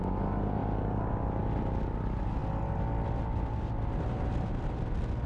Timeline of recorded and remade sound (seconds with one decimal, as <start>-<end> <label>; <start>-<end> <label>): 0.0-5.3 recorded